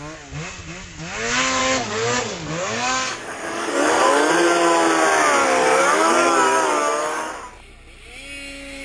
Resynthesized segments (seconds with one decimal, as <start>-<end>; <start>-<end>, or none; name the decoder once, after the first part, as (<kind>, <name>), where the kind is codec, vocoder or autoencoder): 1.6-4.3 (codec, DAC); 5.4-7.3